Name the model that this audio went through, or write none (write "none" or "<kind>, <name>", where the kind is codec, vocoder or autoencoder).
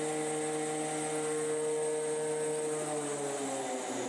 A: none